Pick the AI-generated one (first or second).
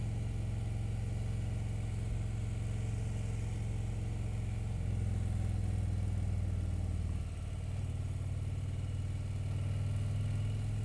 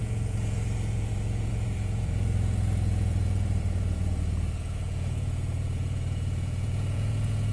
second